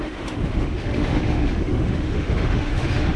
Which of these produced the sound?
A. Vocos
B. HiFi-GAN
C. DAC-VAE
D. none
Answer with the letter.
C